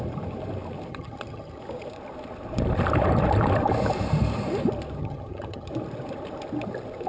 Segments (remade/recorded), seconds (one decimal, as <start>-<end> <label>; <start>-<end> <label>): 0.0-0.9 recorded; 0.9-1.6 remade; 1.6-5.0 recorded; 5.0-5.7 remade; 5.7-7.1 recorded